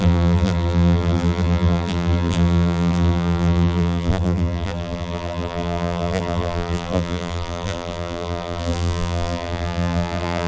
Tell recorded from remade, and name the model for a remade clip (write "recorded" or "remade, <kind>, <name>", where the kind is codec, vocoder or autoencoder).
remade, vocoder, BigVGAN v2